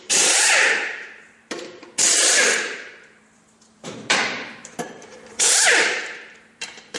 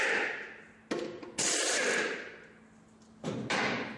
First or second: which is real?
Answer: second